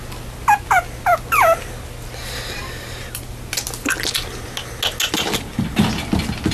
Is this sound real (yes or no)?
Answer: yes